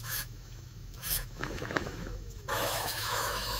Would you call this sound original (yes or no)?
no